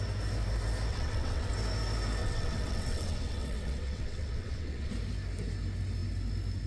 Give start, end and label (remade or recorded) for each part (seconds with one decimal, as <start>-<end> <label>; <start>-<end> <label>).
0.0-0.9 recorded; 0.9-1.5 remade; 1.5-2.2 recorded; 2.2-4.9 remade; 4.9-6.7 recorded